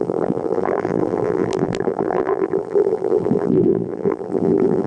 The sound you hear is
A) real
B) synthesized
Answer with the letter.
B